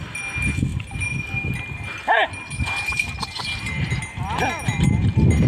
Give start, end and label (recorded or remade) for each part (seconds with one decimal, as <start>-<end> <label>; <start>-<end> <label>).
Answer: 0.0-5.5 recorded